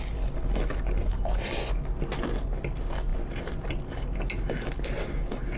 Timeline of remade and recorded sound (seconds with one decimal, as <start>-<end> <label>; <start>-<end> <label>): 0.0-5.6 recorded